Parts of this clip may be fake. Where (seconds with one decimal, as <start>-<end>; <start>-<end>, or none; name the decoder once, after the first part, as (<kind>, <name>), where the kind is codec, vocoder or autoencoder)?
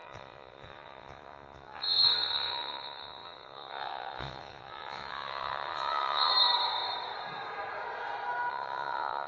0.0-6.3 (vocoder, WaveNeXt); 8.5-9.3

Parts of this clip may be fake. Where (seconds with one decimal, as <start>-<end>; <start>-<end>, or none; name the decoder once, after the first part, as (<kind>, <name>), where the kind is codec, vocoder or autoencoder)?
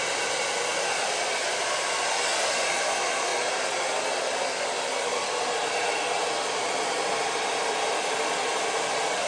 none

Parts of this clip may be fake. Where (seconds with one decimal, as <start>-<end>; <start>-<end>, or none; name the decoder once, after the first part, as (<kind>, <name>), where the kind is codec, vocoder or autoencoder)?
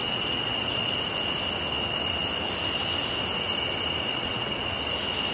0.0-1.0 (vocoder, WaveNeXt); 4.1-4.7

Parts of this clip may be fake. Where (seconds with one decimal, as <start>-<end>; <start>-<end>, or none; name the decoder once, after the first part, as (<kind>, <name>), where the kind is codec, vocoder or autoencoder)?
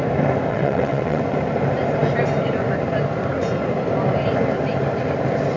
0.5-1.2 (vocoder, WaveNeXt)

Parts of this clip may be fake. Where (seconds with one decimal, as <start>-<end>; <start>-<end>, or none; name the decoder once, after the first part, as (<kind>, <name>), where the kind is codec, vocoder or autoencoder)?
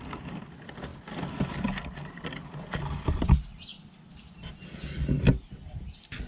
none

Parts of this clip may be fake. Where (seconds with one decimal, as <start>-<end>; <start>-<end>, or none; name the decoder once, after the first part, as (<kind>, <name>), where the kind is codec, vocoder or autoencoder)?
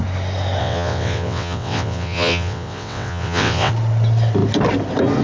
0.6-3.7 (vocoder, WaveNeXt)